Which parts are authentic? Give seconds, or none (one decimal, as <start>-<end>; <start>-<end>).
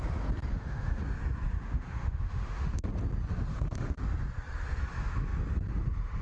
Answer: 0.0-0.5; 1.0-1.5; 2.9-3.5; 4.0-6.2